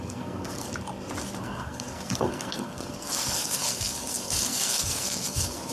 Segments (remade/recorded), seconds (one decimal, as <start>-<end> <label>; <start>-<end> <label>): 0.0-0.7 remade; 0.7-1.4 recorded; 1.4-5.7 remade